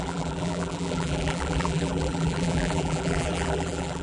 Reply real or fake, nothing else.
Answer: fake